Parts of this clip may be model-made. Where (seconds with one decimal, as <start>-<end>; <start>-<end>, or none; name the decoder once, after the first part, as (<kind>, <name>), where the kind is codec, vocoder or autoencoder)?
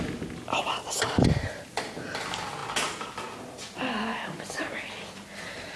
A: none